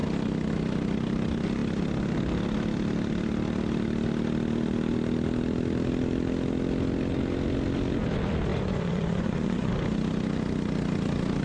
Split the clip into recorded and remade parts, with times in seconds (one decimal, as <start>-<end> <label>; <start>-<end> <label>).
0.0-8.5 recorded; 8.5-9.7 remade; 9.7-11.4 recorded

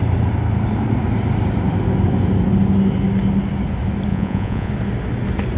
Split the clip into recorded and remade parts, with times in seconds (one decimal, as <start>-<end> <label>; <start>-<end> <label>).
0.0-4.1 recorded; 4.1-4.7 remade; 4.7-5.6 recorded